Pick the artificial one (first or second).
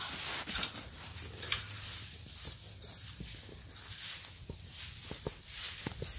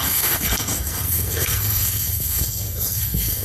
second